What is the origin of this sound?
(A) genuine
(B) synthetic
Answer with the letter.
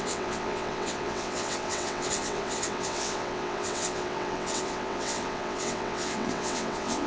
B